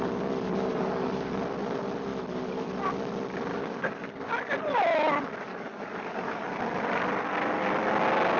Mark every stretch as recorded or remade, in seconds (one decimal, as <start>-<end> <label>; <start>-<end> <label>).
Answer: 0.0-0.7 recorded; 0.7-1.4 remade; 1.4-3.5 recorded; 3.5-4.3 remade; 4.3-5.5 recorded; 5.5-6.6 remade; 6.6-8.4 recorded